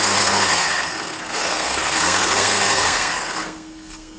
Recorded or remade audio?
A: remade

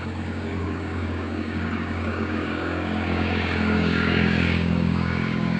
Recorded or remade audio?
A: remade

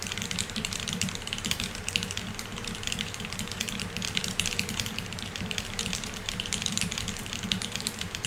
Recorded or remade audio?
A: remade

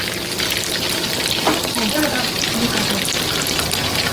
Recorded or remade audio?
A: recorded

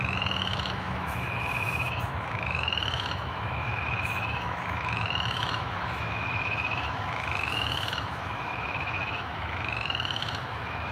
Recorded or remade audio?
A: remade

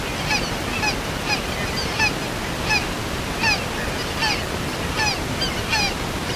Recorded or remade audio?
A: recorded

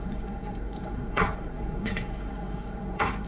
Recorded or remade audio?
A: remade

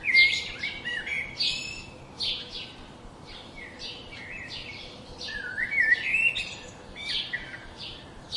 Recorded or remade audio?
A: remade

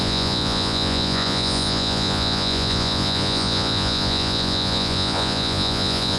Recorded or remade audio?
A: remade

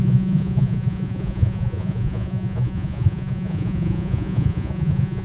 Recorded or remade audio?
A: remade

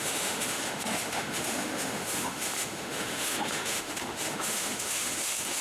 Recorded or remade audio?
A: remade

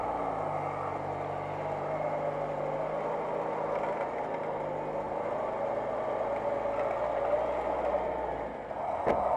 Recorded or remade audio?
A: recorded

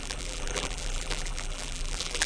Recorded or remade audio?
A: remade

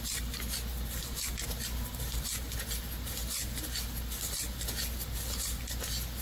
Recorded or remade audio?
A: recorded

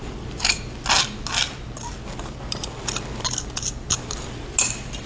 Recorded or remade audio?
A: recorded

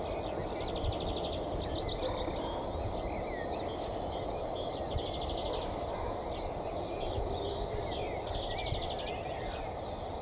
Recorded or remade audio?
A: recorded